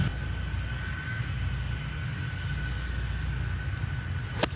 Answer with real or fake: real